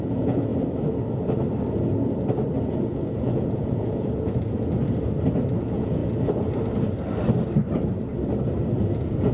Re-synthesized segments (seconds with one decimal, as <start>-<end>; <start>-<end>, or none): 0.0-0.5; 2.6-4.8; 5.6-6.0; 8.8-9.3